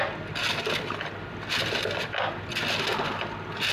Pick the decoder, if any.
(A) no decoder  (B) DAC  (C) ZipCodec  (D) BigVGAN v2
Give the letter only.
A